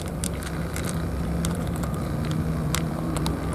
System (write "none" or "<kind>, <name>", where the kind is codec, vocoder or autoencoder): vocoder, BigVGAN v2